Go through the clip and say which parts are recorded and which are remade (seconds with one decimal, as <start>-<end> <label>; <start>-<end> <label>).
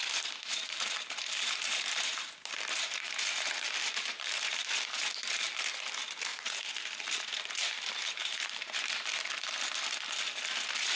0.0-0.5 recorded; 0.5-5.5 remade; 5.5-6.3 recorded; 6.3-7.2 remade; 7.2-8.2 recorded; 8.2-9.0 remade; 9.0-11.0 recorded